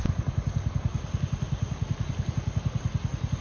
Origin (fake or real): real